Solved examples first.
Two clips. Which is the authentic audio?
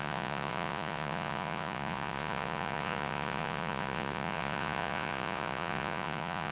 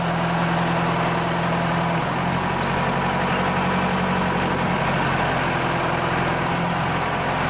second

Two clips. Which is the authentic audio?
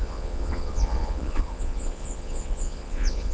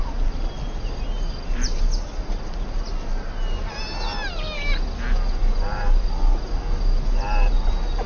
second